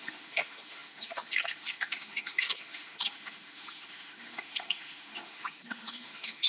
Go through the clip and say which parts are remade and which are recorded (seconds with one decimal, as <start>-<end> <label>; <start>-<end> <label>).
0.0-6.5 remade